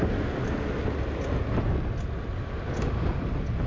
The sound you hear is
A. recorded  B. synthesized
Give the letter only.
A